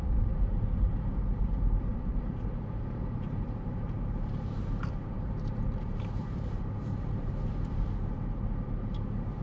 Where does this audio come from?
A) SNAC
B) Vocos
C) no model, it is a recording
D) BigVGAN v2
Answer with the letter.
D